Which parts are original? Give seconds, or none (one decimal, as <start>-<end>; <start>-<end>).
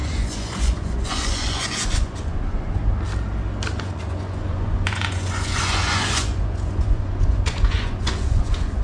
2.8-3.7